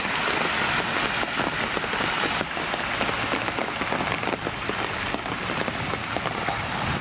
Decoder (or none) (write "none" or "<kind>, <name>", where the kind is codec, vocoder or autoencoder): none